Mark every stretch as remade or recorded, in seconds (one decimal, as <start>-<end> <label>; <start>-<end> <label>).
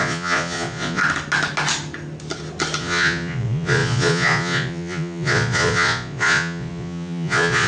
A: 0.0-1.0 remade; 1.0-2.8 recorded; 2.8-7.7 remade